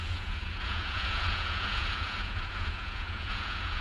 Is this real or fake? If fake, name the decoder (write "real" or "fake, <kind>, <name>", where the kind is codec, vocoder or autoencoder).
fake, vocoder, Vocos